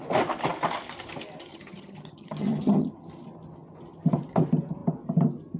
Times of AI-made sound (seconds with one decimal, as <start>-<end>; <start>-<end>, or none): 1.5-2.9